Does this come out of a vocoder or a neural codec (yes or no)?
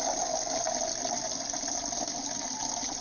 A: no